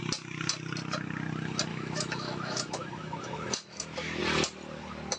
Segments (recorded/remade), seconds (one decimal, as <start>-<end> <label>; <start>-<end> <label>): 0.0-1.7 recorded; 1.7-4.2 remade; 4.2-5.2 recorded